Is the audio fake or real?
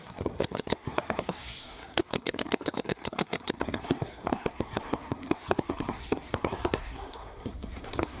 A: fake